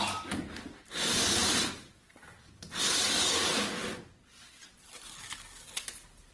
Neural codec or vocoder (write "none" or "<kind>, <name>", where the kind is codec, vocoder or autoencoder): none